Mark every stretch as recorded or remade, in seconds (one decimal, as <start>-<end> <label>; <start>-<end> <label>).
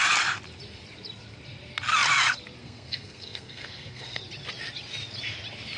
0.0-2.6 recorded; 2.6-4.2 remade; 4.2-5.8 recorded